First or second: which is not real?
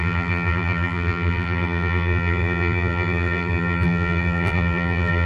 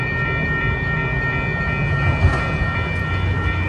first